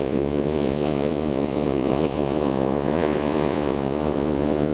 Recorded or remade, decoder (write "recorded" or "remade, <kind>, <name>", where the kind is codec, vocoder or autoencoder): remade, vocoder, Vocos